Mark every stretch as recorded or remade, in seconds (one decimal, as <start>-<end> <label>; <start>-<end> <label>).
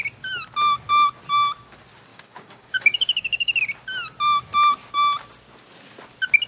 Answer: 0.0-2.1 recorded; 2.1-3.6 remade; 3.6-6.5 recorded